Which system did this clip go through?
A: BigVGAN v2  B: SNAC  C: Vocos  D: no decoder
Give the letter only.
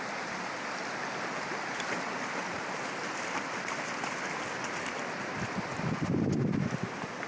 D